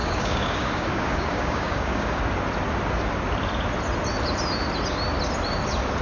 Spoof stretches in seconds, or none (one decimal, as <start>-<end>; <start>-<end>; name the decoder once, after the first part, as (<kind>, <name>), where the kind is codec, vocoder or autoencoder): 0.0-2.2 (codec, DAC)